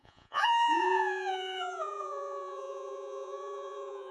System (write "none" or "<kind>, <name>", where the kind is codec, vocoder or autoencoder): vocoder, Vocos